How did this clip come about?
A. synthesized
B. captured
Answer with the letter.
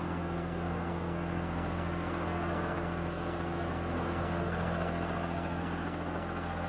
A